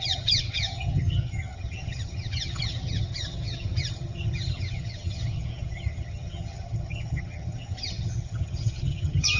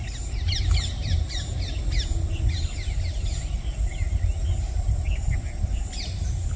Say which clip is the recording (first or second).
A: second